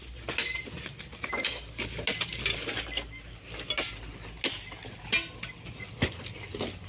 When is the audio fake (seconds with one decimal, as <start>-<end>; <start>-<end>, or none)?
none